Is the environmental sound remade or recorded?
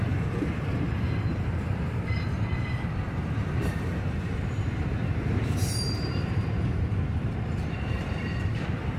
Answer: remade